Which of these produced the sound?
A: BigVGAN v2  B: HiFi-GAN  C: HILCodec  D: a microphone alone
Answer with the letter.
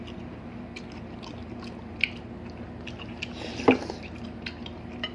D